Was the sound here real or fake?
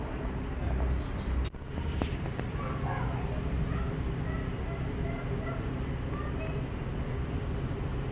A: real